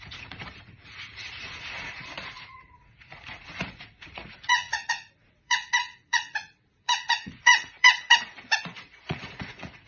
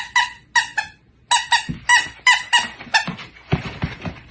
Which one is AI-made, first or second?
first